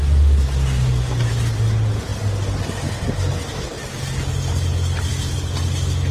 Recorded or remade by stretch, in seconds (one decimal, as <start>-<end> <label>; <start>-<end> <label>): 0.0-6.1 recorded